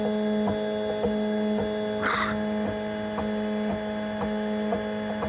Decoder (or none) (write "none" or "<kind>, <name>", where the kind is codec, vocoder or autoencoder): none